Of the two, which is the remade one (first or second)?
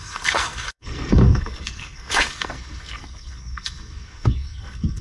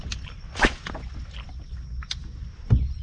first